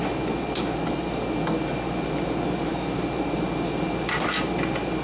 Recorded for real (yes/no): no